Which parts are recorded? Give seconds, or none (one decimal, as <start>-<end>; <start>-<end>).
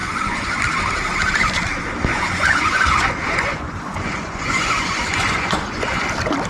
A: 0.6-2.1; 6.0-6.5